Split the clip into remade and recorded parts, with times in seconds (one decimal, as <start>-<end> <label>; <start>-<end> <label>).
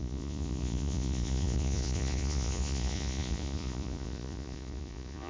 0.0-5.3 remade